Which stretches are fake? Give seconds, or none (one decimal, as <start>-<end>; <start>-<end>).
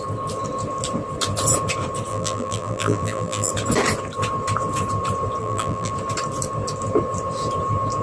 2.1-3.5; 5.4-5.9